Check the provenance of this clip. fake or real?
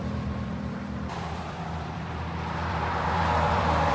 fake